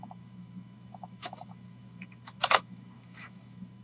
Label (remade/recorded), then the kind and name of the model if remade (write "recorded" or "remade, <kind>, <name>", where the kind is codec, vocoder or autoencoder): remade, autoencoder, DAC-VAE